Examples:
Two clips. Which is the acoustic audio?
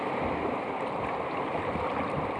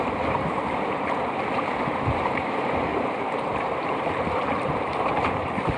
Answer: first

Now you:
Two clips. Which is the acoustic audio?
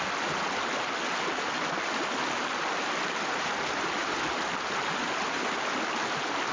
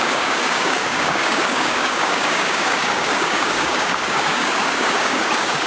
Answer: first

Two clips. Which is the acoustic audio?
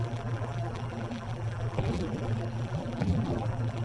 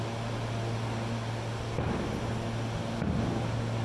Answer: second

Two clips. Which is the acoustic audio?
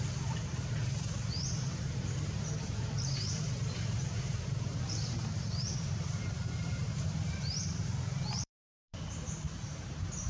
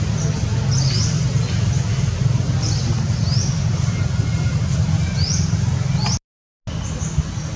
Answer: second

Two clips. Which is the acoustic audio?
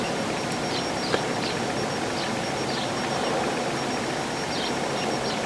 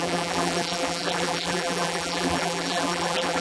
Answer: first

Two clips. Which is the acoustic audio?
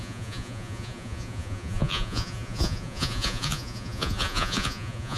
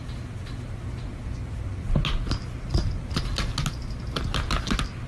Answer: second